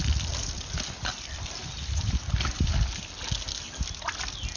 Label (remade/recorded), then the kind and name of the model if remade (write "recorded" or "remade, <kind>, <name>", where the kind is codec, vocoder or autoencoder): recorded